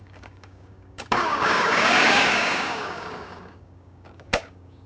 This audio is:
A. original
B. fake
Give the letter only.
B